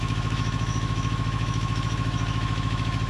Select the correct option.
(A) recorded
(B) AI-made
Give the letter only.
B